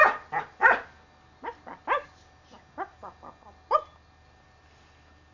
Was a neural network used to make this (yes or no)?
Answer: no